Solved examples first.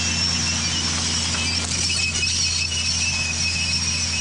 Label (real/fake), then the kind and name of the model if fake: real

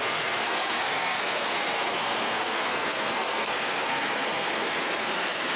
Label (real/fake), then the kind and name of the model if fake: fake, codec, SNAC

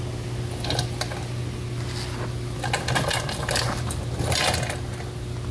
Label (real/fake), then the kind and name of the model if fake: real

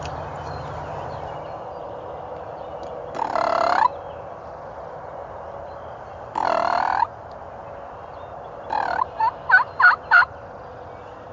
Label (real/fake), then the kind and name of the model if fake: real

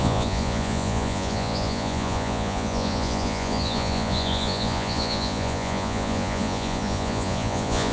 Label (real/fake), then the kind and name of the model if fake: fake, vocoder, Vocos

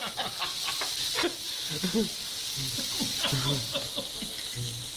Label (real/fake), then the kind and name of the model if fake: real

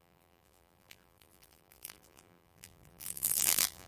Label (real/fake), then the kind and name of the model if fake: fake, vocoder, BigVGAN v2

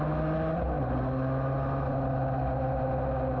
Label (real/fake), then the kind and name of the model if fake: real